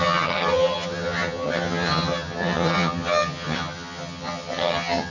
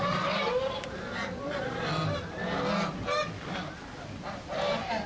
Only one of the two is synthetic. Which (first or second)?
first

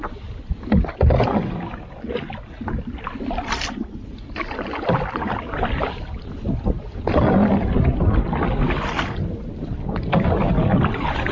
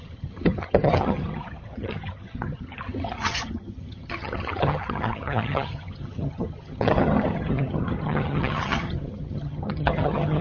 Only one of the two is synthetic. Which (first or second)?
second